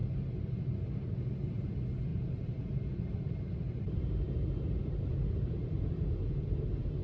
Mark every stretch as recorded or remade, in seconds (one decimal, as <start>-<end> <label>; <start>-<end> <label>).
0.0-1.7 remade; 1.7-2.1 recorded; 2.1-6.3 remade; 6.3-7.0 recorded